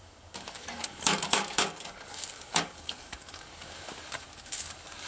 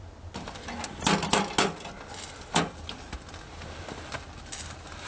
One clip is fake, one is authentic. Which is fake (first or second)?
first